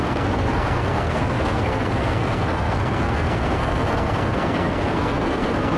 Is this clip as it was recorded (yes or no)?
no